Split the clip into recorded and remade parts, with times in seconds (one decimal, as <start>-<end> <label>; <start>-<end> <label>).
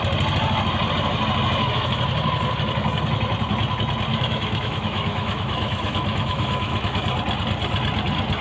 0.0-4.1 recorded; 4.1-7.0 remade; 7.0-8.4 recorded